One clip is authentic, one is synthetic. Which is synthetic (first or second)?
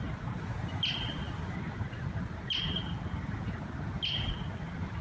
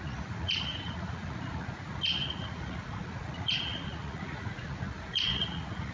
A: second